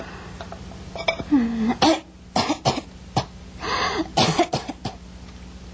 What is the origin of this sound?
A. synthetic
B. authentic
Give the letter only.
B